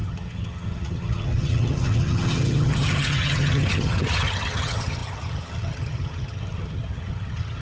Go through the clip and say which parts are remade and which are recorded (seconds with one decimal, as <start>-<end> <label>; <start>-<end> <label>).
0.0-7.6 remade